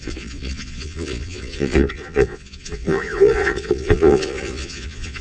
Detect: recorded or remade remade